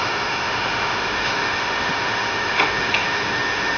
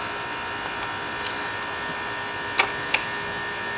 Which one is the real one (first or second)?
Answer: second